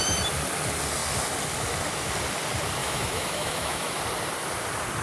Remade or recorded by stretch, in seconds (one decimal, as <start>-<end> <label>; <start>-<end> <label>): 0.0-2.8 recorded; 2.8-4.0 remade; 4.0-5.0 recorded